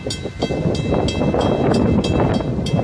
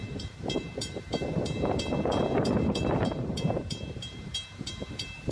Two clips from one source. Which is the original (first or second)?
first